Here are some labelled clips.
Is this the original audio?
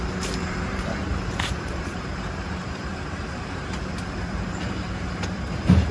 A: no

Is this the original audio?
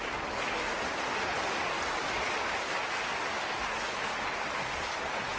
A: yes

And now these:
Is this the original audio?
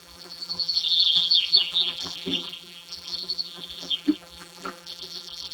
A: no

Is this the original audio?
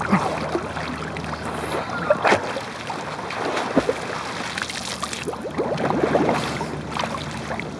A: yes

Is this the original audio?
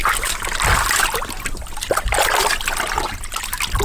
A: yes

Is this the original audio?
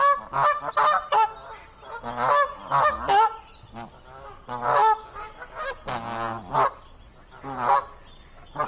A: yes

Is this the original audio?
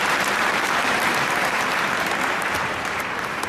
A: no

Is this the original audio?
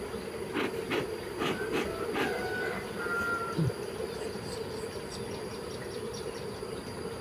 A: yes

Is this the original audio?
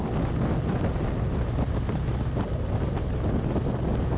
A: yes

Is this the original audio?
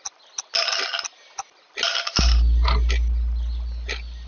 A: yes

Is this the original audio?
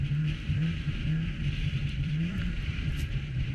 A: no